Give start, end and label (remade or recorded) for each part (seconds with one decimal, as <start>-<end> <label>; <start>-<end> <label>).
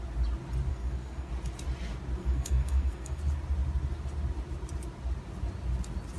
0.0-0.7 recorded; 0.7-1.3 remade; 1.3-2.2 recorded; 2.2-3.2 remade; 3.2-6.2 recorded